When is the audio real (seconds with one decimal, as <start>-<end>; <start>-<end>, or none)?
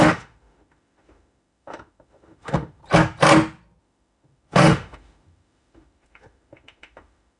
2.8-3.8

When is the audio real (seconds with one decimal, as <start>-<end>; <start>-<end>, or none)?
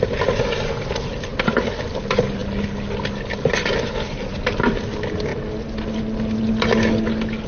0.0-7.5